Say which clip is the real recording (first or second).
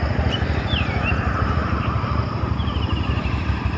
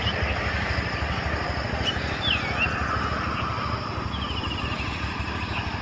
second